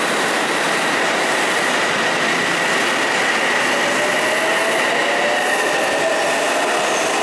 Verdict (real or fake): real